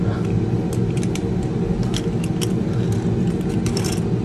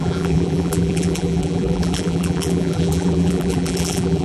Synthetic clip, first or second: second